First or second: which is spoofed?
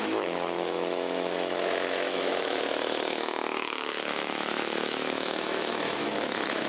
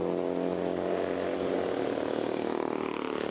first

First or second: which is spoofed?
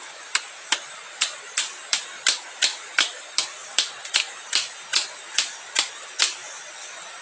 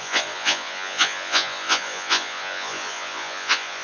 second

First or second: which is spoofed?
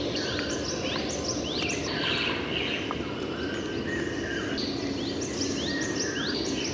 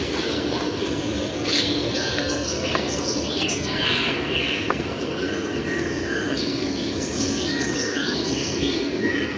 second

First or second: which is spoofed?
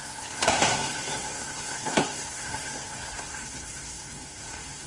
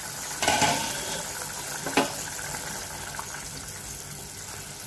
first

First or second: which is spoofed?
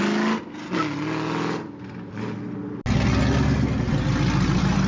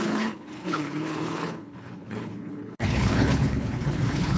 second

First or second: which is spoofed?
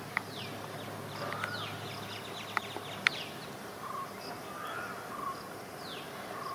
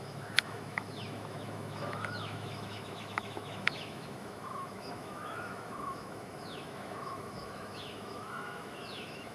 second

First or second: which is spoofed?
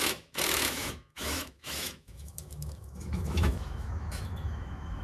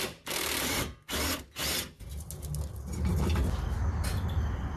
first